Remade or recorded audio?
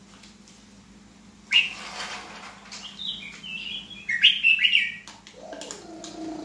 recorded